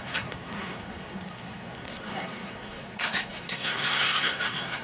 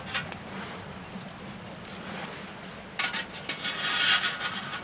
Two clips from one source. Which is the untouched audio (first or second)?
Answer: second